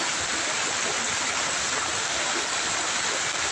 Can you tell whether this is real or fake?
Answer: real